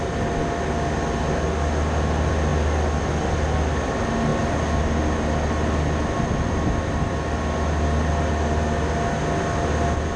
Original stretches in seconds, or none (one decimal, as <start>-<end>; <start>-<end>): 0.0-10.2